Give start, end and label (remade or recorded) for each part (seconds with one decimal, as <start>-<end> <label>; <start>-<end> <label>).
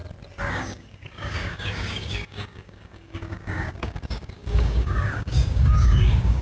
0.0-0.5 recorded; 0.5-6.4 remade